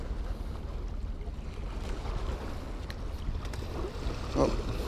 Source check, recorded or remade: recorded